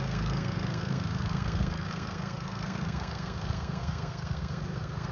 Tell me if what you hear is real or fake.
fake